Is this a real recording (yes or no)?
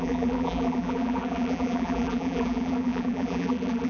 no